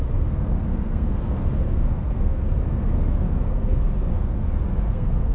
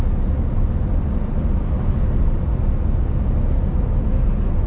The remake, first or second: first